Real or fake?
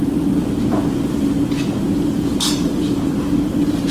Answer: real